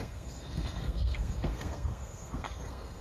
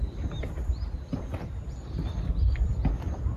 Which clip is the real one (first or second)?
second